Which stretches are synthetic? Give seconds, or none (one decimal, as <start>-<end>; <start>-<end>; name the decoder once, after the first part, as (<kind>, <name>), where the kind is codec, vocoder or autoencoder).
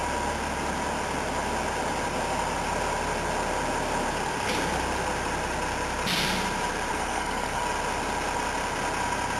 6.9-7.6 (codec, SNAC)